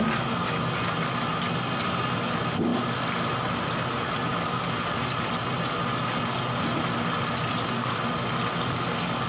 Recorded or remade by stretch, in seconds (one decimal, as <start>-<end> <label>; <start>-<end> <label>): 0.0-9.3 recorded